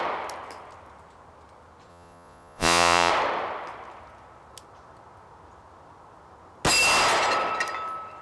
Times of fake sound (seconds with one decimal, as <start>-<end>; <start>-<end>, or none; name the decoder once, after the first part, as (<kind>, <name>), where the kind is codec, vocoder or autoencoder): 1.9-3.1 (vocoder, Vocos)